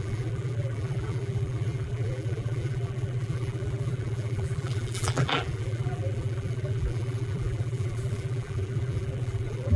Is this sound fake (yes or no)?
yes